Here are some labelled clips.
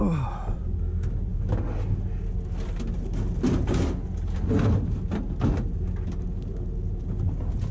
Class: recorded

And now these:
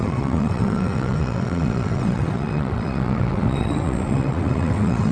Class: remade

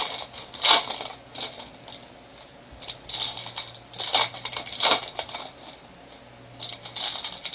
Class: recorded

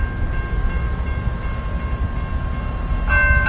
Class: recorded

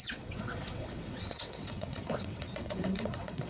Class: remade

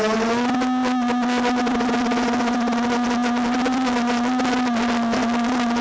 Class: recorded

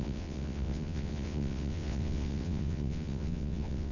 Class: remade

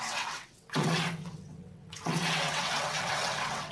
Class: remade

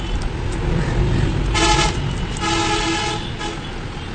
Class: recorded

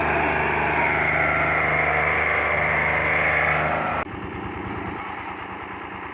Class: recorded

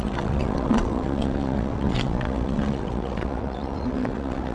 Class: remade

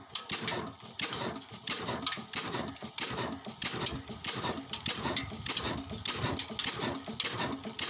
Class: recorded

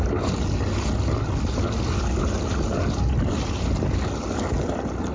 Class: recorded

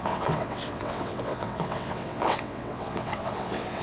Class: remade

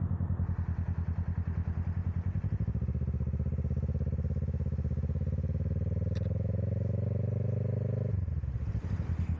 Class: recorded